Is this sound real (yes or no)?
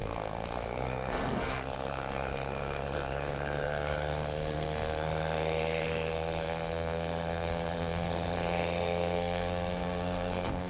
no